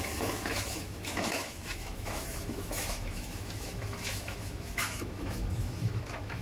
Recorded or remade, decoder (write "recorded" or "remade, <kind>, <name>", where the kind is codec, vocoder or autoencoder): remade, autoencoder, DAC-VAE